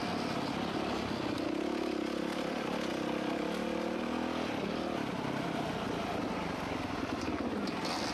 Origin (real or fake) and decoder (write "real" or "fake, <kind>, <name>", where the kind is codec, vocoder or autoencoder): real